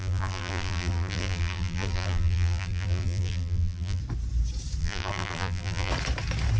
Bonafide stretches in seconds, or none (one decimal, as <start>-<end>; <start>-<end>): 4.0-4.8; 5.9-6.6